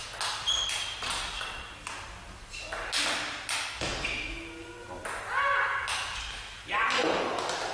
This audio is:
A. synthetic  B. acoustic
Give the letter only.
B